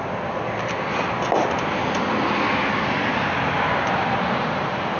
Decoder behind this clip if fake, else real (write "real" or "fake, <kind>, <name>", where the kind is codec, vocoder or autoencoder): real